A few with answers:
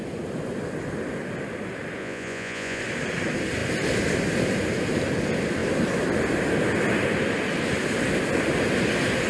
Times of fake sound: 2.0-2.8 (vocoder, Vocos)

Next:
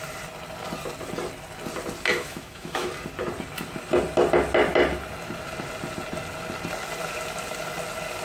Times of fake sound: 2.1-2.9 (autoencoder, DAC-VAE)

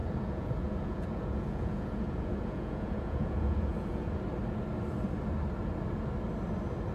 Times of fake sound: 0.0-4.1 (vocoder, Vocos)

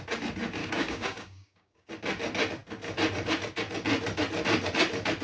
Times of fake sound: 0.6-1.9 (codec, DAC)

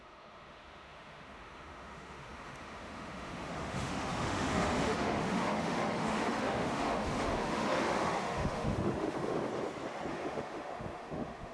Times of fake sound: 0.0-9.5 (autoencoder, DAC-VAE); 10.1-11.5